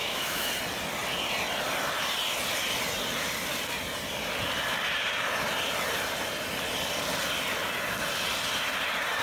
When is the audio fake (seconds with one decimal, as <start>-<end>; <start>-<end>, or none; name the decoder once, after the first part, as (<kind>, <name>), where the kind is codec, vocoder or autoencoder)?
0.0-0.5 (autoencoder, DAC-VAE)